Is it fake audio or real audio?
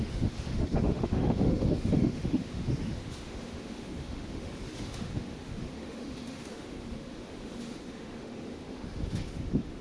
fake